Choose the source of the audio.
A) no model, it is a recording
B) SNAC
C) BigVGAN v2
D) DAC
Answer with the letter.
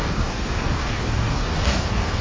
D